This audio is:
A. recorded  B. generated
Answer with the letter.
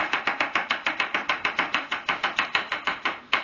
B